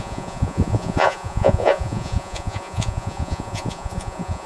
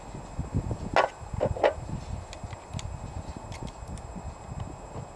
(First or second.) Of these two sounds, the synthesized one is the first